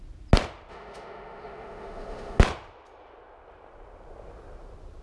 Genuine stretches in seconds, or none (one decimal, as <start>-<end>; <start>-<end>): 0.0-0.7; 2.4-5.0